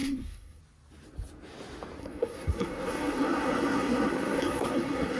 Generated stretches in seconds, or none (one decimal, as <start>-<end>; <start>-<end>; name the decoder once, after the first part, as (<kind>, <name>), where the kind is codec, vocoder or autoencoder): 0.0-0.6 (codec, SNAC); 2.0-5.2

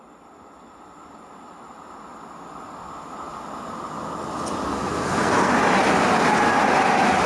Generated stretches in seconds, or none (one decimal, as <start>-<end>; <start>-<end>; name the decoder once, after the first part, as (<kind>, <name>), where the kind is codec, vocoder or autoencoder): 4.7-5.5 (codec, SNAC)

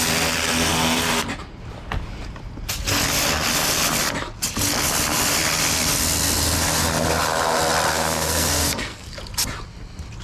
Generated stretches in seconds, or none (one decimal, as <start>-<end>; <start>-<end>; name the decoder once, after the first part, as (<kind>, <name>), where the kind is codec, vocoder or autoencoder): 7.9-9.2 (codec, SNAC)

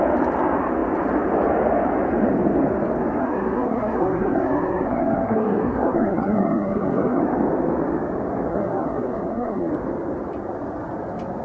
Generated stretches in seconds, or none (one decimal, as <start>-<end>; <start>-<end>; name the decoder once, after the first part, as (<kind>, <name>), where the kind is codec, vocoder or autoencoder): 3.2-7.2 (codec, SNAC); 8.5-9.7

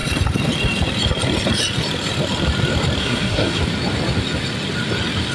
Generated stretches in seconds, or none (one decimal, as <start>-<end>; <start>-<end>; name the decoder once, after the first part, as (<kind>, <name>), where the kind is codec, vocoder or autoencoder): 3.0-3.6 (codec, SNAC)

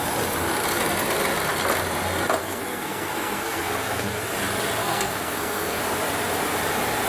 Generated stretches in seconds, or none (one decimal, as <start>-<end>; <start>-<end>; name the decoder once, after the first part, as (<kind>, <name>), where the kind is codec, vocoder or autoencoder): 2.4-4.2 (codec, SNAC); 4.8-5.8

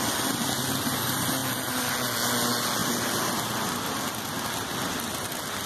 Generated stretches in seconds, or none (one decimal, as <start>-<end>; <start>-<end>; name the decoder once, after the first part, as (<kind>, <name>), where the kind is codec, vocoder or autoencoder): none